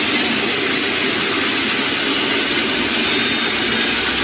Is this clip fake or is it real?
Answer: real